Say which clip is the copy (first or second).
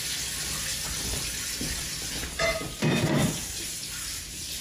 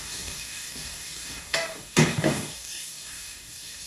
second